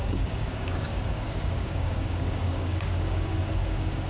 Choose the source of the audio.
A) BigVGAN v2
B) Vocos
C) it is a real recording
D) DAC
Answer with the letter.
D